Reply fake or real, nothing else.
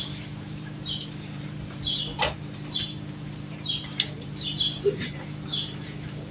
fake